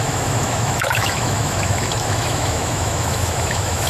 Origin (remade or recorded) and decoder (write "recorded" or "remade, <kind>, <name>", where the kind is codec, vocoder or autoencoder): remade, autoencoder, DAC-VAE